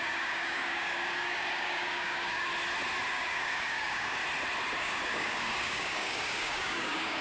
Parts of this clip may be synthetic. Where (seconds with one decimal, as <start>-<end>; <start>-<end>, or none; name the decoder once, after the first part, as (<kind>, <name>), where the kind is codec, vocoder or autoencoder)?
0.0-2.5 (codec, DAC); 3.1-4.2; 4.8-7.2